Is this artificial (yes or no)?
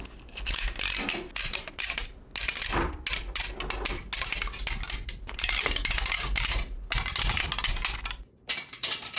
no